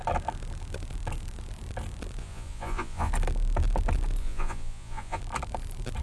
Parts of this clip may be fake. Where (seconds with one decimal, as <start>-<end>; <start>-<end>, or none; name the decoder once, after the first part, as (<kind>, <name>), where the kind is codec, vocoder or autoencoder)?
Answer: 2.2-3.1 (vocoder, Vocos); 4.2-5.2